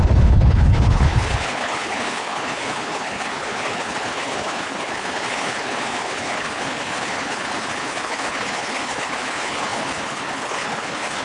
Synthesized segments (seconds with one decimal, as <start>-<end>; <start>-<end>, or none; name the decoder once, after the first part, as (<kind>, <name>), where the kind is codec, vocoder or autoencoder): 0.0-11.2 (codec, HILCodec)